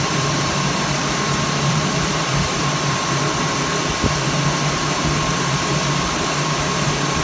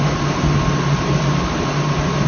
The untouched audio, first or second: second